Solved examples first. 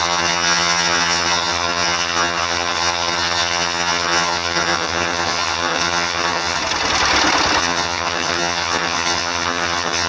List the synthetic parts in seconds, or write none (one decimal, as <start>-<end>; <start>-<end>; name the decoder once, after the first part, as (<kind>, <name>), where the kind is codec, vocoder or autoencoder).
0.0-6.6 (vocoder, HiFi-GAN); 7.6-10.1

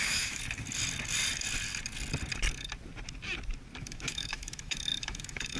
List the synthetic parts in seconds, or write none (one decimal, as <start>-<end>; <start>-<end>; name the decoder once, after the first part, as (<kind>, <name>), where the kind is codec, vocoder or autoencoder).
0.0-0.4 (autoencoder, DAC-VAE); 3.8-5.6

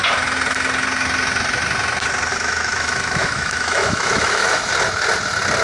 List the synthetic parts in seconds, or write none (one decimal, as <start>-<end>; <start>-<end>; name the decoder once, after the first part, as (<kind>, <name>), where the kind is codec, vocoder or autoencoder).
2.3-4.7 (autoencoder, DAC-VAE)